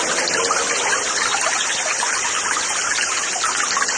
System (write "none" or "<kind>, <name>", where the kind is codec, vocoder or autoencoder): none